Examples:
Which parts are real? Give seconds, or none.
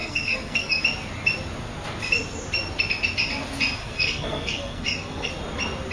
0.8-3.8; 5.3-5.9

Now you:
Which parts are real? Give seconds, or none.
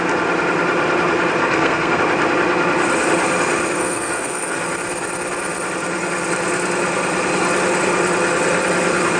0.0-1.4; 2.0-3.8; 4.6-9.2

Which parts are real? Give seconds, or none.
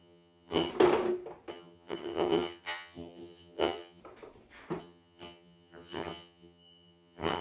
0.7-1.5; 4.0-4.8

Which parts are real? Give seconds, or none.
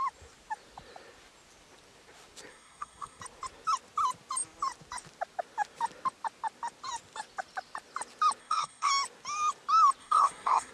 0.0-2.5; 3.2-8.4; 8.9-10.0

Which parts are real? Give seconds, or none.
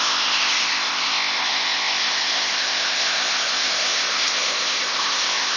none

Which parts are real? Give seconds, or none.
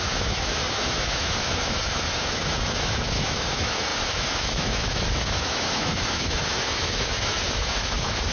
none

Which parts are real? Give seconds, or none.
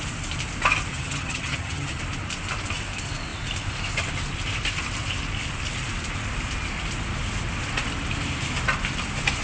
0.0-0.9; 2.0-9.4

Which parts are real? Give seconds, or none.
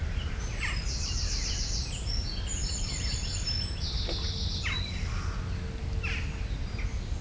0.0-7.2